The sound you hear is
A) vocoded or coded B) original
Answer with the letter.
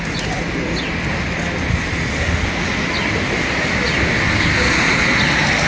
B